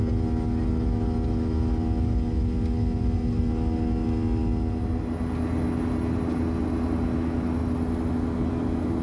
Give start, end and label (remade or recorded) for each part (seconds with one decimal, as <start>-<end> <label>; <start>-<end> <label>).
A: 0.0-9.0 recorded